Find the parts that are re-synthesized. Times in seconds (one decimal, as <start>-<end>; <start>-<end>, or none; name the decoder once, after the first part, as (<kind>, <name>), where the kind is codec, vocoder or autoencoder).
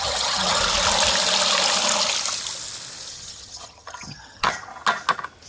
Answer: 0.0-0.6 (vocoder, HiFi-GAN); 3.1-4.7